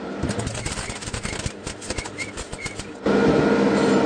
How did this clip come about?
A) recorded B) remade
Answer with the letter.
A